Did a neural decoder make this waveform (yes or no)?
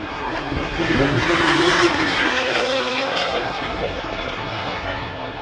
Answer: yes